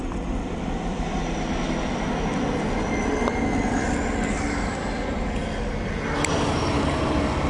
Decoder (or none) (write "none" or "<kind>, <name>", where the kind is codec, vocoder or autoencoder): none